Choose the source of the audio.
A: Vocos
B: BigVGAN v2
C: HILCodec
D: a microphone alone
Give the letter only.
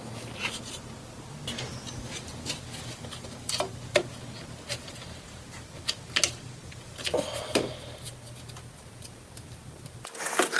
D